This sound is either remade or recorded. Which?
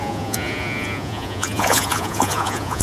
remade